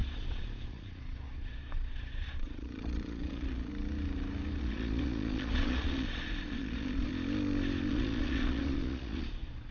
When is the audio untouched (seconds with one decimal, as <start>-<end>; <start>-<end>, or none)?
3.7-4.6; 7.1-7.9